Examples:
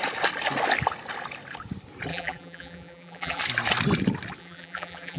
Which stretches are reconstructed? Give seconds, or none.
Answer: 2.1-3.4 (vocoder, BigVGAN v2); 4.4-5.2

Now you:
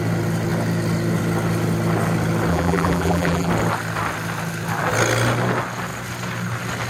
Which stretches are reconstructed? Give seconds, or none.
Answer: 2.5-3.5 (vocoder, BigVGAN v2)

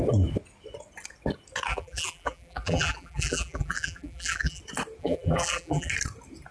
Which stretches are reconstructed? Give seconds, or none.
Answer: 1.7-4.6 (vocoder, BigVGAN v2); 5.0-5.9

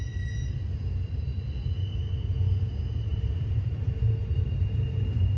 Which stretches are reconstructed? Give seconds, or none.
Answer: 3.1-4.8 (vocoder, BigVGAN v2)

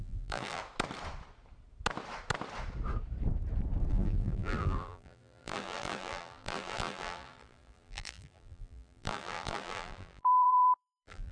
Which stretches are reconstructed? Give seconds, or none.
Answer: 0.0-0.6 (vocoder, BigVGAN v2); 3.9-11.3

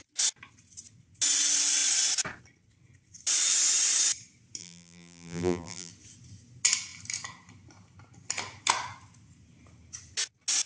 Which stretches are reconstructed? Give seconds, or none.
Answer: 4.6-5.9 (vocoder, BigVGAN v2)

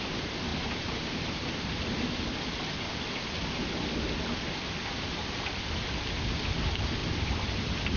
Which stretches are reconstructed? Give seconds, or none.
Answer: 0.5-1.5 (vocoder, BigVGAN v2); 7.0-7.5

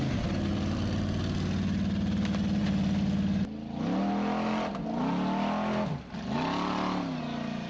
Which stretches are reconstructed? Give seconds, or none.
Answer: 0.5-1.2 (vocoder, BigVGAN v2)